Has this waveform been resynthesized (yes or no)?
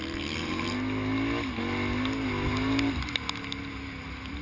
no